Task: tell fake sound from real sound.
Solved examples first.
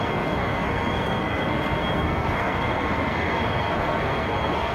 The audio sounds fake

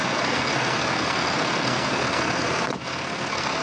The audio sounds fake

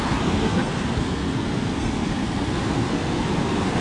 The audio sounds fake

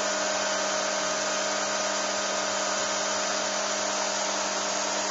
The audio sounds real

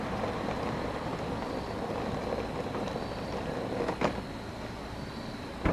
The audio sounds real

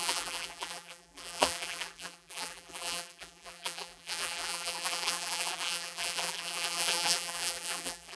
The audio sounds fake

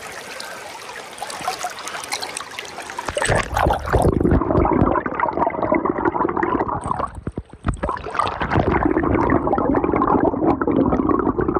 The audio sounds real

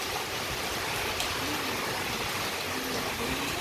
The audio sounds real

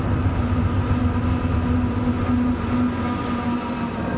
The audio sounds real